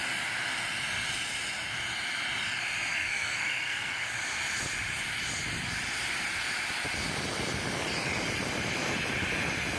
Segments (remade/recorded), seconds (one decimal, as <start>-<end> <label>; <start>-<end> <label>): 0.0-2.9 recorded; 2.9-4.1 remade; 4.1-9.8 recorded